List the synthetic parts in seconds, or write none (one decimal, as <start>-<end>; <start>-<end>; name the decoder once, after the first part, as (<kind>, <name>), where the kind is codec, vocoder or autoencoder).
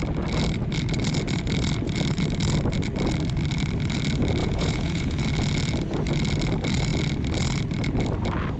4.4-5.2 (vocoder, Vocos)